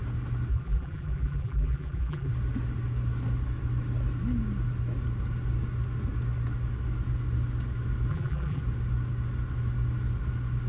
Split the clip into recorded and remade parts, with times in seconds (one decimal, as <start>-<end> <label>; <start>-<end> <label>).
0.0-0.5 recorded; 0.5-2.3 remade; 2.3-8.1 recorded; 8.1-8.6 remade; 8.6-10.7 recorded